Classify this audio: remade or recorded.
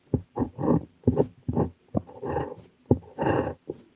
recorded